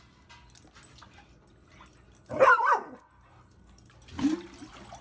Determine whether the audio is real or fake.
real